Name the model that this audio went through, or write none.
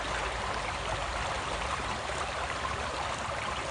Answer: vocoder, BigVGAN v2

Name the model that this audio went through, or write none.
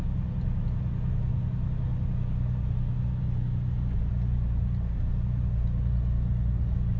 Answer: none